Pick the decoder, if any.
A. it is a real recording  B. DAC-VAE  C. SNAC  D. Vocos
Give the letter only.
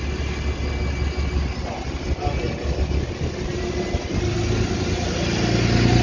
A